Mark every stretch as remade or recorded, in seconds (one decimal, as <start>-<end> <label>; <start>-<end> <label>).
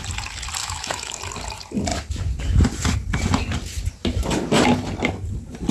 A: 0.0-0.6 recorded; 0.6-1.2 remade; 1.2-5.7 recorded